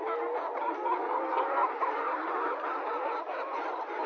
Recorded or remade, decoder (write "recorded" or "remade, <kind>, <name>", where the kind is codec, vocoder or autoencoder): recorded